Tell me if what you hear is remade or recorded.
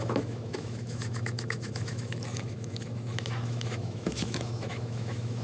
remade